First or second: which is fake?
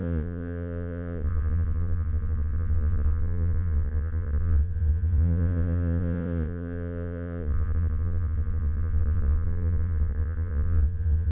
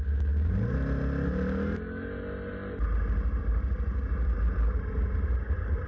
first